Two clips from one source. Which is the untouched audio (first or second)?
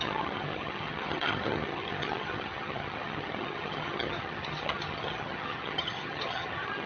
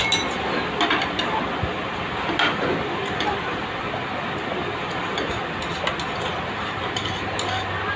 second